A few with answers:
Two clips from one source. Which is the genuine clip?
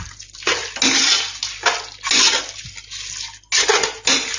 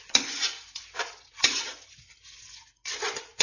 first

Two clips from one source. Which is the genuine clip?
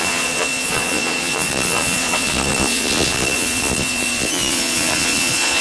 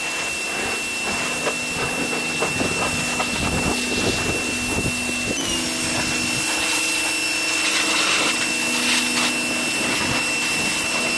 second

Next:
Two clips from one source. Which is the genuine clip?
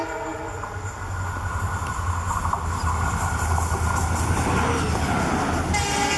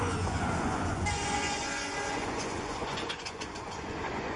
first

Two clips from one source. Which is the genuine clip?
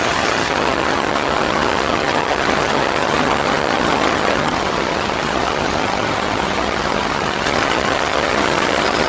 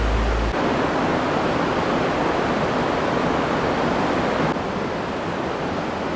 second